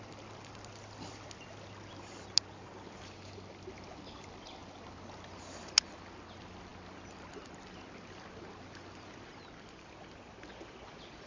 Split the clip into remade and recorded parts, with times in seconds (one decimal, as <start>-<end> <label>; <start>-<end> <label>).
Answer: 0.0-11.3 recorded